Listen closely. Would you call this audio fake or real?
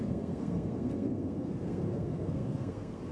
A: fake